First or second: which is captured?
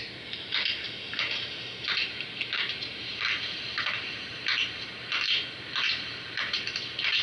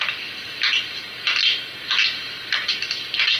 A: second